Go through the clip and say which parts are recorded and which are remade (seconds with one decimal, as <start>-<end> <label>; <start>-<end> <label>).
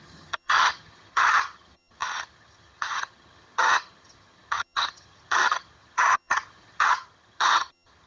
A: 0.0-8.1 remade